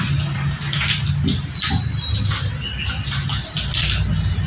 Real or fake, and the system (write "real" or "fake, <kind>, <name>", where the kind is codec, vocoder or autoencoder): real